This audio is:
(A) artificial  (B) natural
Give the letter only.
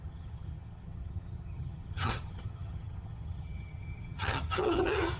A